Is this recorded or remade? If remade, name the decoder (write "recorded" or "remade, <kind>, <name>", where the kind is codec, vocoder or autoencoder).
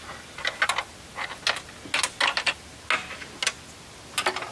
recorded